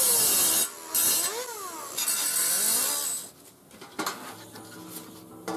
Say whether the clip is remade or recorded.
recorded